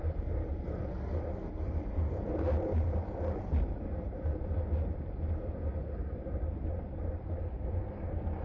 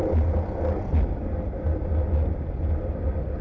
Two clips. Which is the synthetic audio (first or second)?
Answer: first